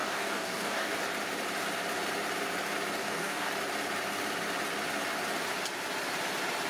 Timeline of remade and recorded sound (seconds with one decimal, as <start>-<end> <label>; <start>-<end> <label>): 0.0-0.9 remade; 0.9-3.0 recorded; 3.0-3.5 remade; 3.5-6.7 recorded